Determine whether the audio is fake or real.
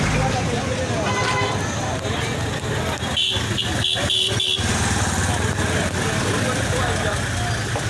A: real